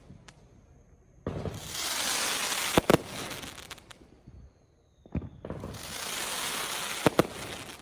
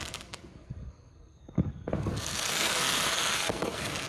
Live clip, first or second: first